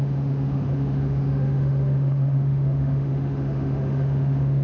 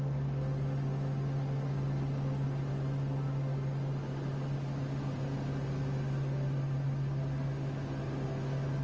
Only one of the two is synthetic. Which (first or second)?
first